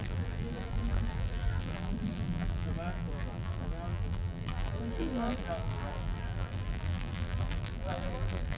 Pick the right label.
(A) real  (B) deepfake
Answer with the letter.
B